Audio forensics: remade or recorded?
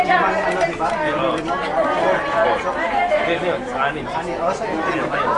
recorded